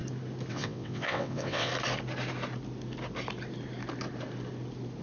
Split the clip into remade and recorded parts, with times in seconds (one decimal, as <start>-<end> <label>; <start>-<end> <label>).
0.0-0.5 recorded; 0.5-1.7 remade; 1.7-5.0 recorded